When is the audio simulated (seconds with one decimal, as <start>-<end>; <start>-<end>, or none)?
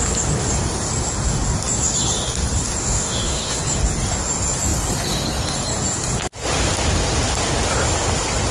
2.8-3.6